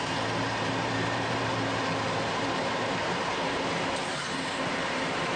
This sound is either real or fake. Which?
fake